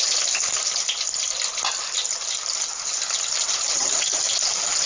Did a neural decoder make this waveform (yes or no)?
no